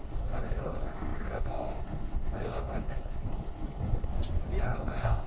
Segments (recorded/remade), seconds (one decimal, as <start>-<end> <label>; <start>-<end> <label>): 0.0-4.1 remade; 4.1-4.6 recorded; 4.6-5.3 remade